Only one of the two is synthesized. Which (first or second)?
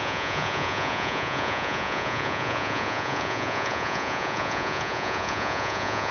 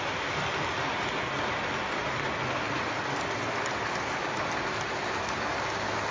first